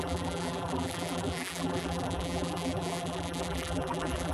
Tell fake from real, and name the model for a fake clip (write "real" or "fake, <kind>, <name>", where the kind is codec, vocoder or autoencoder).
fake, vocoder, BigVGAN v2